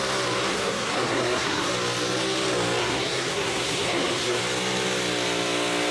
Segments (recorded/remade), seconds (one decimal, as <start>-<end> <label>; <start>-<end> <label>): 0.0-0.5 recorded; 0.5-1.7 remade; 1.7-2.8 recorded; 2.8-4.4 remade; 4.4-5.9 recorded